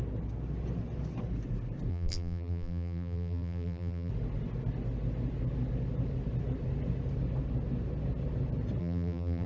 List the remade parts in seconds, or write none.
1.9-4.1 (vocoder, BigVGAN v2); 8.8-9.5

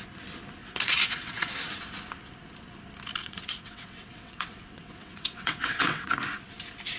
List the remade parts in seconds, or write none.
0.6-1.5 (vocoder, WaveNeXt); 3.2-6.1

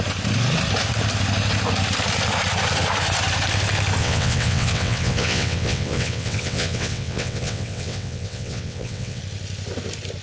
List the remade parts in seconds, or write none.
4.0-9.2 (vocoder, WaveNeXt)